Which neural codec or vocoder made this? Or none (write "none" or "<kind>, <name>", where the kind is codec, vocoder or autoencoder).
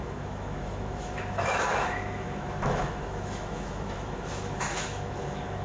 autoencoder, DAC-VAE